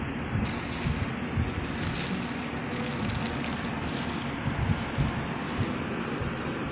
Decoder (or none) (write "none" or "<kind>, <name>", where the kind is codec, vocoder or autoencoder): none